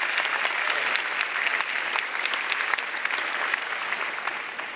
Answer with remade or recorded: recorded